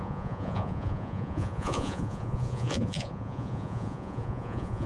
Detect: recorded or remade remade